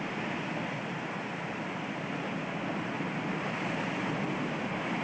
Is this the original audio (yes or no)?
yes